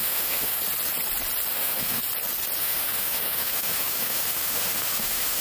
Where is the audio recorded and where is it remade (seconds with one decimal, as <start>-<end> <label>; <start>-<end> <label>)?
0.0-0.6 remade; 0.6-1.5 recorded; 1.5-2.0 remade; 2.0-2.6 recorded; 2.6-5.4 remade